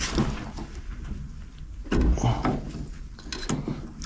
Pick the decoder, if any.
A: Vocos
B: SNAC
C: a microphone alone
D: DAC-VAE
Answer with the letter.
C